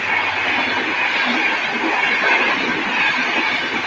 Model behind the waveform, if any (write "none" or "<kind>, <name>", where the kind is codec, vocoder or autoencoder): none